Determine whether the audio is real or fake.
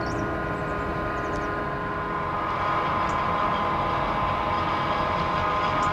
real